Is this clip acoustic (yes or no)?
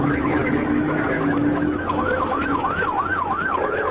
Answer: no